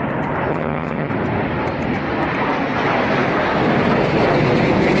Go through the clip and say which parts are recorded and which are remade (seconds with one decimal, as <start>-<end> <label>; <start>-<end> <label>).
0.0-0.5 recorded; 0.5-1.1 remade; 1.1-5.0 recorded